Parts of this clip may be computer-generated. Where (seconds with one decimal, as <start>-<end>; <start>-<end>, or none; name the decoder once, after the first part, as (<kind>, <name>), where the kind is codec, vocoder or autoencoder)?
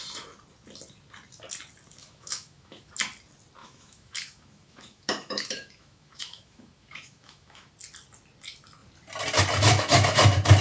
2.0-2.9 (autoencoder, DAC-VAE); 3.6-7.7